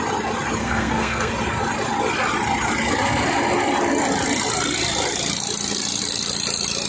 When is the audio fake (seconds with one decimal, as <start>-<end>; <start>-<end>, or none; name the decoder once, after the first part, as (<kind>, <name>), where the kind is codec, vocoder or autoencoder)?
0.6-1.3 (codec, SNAC)